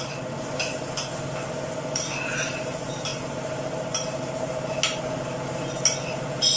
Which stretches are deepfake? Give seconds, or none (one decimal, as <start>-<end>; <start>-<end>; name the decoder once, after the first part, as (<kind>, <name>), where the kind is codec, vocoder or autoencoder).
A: none